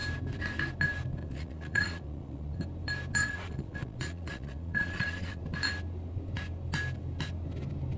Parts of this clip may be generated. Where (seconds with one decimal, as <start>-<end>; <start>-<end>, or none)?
1.2-2.6; 3.2-5.4